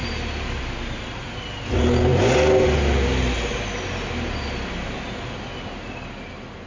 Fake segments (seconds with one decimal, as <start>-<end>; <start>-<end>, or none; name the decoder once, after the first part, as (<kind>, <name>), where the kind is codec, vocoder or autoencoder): none